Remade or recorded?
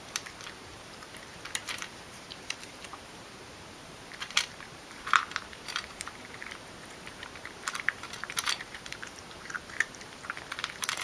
remade